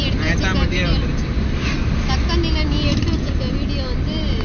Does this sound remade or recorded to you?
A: recorded